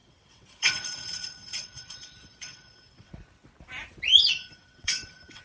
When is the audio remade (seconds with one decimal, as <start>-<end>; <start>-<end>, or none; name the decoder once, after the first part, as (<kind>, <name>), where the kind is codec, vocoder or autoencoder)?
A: 0.0-3.1 (vocoder, WaveNeXt); 4.4-5.4